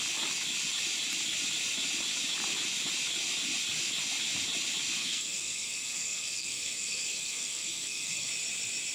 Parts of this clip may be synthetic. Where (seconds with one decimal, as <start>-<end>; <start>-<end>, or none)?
5.0-8.3